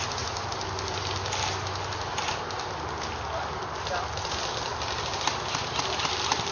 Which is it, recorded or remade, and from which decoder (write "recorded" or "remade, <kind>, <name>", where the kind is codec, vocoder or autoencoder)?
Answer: recorded